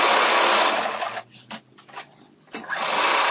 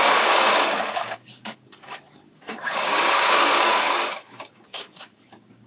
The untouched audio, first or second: first